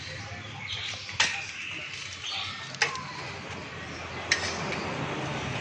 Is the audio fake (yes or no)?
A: no